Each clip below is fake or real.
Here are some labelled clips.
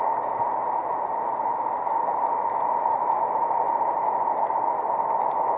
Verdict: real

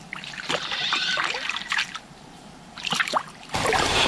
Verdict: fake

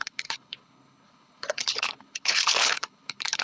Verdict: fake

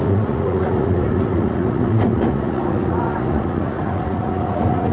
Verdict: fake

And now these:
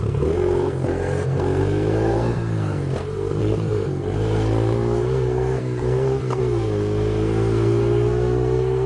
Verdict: fake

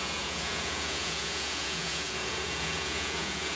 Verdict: fake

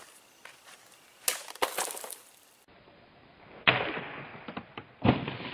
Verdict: real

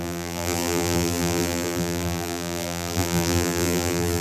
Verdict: fake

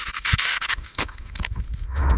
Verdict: fake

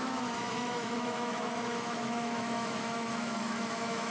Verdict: fake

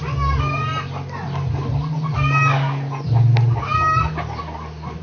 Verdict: real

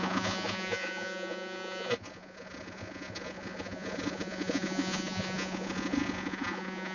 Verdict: fake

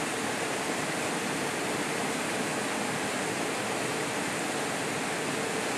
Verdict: real